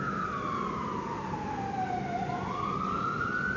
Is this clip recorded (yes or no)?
yes